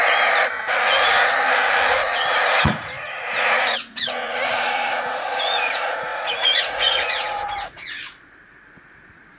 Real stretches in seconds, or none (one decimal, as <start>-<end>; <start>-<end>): 0.0-2.6